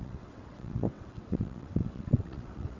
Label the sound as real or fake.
fake